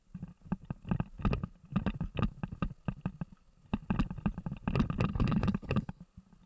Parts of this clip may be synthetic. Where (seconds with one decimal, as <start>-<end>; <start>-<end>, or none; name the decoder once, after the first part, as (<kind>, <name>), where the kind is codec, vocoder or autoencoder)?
5.1-6.0 (codec, HILCodec)

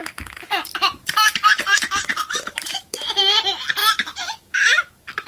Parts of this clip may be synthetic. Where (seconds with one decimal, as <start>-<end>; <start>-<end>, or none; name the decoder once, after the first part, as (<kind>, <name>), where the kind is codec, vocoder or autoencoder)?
0.0-3.2 (autoencoder, DAC-VAE); 3.8-5.3

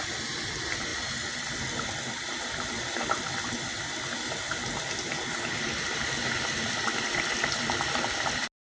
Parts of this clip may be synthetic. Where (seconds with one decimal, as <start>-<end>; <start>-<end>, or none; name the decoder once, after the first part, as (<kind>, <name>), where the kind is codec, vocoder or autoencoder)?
none

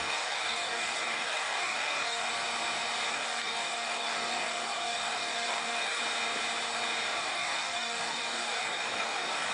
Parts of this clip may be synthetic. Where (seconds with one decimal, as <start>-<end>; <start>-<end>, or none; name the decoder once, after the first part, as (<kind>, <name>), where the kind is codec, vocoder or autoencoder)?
0.0-2.3 (codec, DAC); 3.1-6.0; 7.2-9.5